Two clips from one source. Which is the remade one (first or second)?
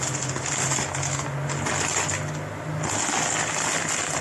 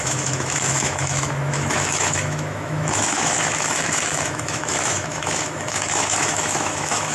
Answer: second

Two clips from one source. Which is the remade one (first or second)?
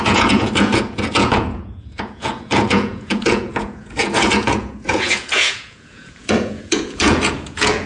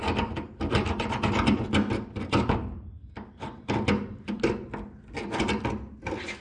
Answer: first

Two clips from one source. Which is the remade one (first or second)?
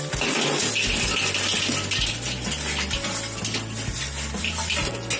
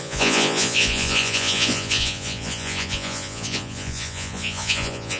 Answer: second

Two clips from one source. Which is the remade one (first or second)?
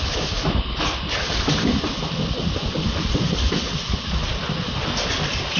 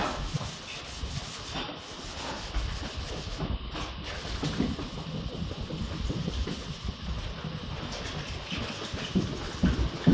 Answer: first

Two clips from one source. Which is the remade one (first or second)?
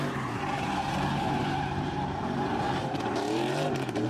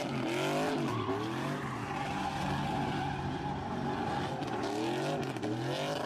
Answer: first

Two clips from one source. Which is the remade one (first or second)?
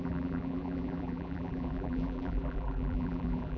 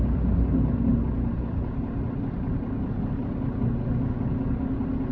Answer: first